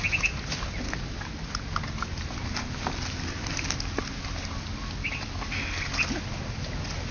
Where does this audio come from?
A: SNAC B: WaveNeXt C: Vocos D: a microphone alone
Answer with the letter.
D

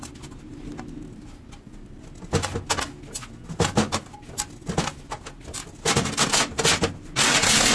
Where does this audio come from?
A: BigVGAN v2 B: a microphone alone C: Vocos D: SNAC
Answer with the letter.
B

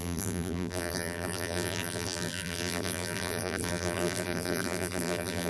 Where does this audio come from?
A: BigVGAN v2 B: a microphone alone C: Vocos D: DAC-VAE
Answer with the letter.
A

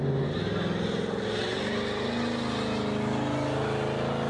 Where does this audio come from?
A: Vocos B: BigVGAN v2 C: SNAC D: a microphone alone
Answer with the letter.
D